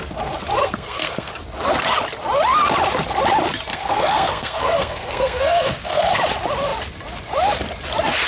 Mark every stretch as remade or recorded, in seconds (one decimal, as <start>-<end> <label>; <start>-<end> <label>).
0.0-0.6 recorded; 0.6-1.3 remade; 1.3-3.7 recorded; 3.7-6.2 remade; 6.2-8.3 recorded